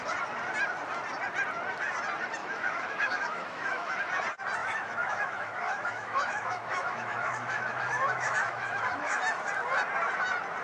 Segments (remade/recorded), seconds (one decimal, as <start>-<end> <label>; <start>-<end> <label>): 0.0-2.4 recorded; 2.4-3.9 remade; 3.9-4.6 recorded; 4.6-9.2 remade; 9.2-10.6 recorded